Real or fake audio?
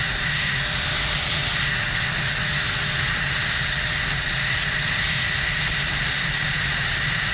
real